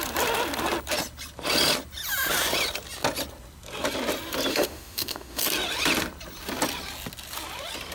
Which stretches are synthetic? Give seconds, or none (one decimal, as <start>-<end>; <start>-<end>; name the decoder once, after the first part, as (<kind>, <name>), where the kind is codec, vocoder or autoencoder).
4.5-5.4 (autoencoder, DAC-VAE)